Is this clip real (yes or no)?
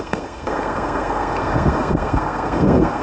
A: no